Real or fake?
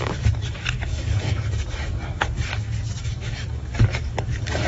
fake